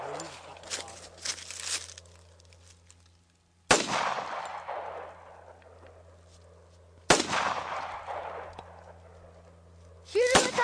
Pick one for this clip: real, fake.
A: real